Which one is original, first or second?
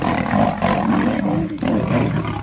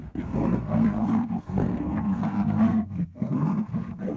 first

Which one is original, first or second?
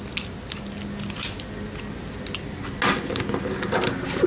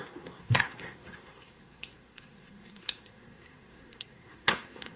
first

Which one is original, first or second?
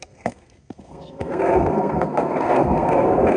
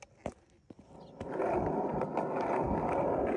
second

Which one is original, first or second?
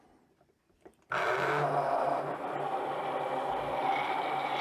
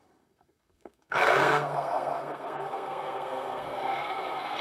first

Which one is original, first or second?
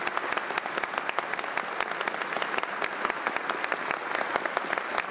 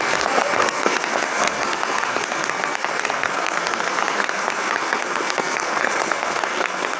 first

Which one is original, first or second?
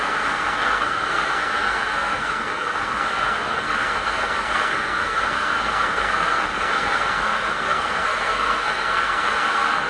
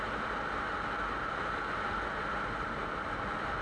second